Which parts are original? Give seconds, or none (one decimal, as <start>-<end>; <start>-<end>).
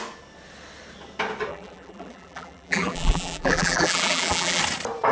0.0-1.5; 4.6-5.1